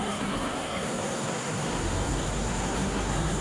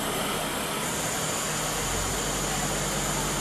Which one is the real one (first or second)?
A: second